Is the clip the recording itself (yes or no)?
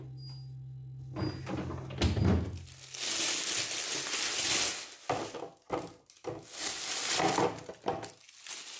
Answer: yes